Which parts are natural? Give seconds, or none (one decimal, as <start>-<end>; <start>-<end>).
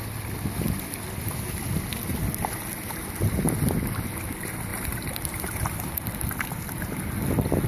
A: 0.0-2.1; 2.6-4.7; 5.4-7.7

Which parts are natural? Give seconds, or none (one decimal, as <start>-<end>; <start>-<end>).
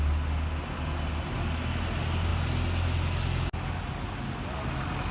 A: 0.0-5.1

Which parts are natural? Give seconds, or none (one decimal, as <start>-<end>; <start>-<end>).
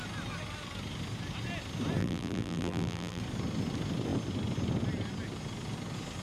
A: 0.0-2.0; 3.2-6.2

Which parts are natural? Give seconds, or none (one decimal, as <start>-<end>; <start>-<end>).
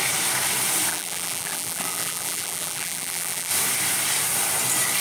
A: 0.0-0.9; 3.5-5.0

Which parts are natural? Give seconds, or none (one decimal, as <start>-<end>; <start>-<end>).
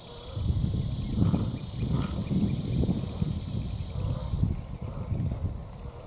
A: 0.0-2.2; 5.0-5.4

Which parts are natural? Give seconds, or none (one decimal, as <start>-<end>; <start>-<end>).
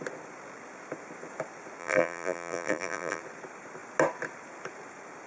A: 0.0-1.8; 3.2-5.3